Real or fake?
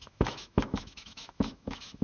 fake